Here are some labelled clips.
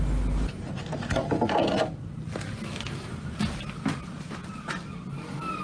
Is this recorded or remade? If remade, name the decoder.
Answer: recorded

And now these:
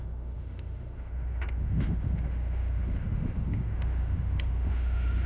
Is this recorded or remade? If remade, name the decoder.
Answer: remade, autoencoder, DAC-VAE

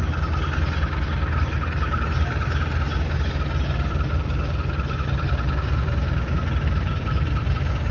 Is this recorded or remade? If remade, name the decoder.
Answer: recorded